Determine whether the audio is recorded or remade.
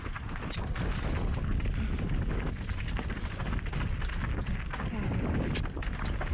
recorded